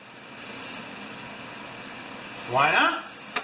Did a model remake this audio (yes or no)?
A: no